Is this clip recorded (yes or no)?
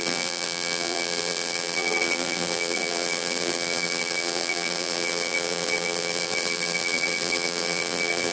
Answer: no